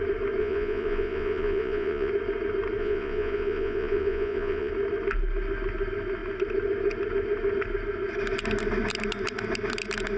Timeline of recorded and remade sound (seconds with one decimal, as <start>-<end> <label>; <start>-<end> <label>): 0.0-0.4 recorded; 0.4-2.1 remade; 2.1-2.8 recorded; 2.8-4.7 remade; 4.7-10.2 recorded